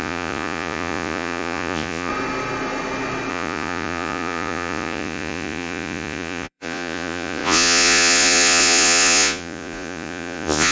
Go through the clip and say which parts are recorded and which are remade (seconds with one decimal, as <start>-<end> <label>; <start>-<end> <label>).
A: 0.0-2.1 remade; 2.1-3.3 recorded; 3.3-10.7 remade